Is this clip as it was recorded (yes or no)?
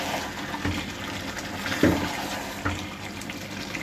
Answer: yes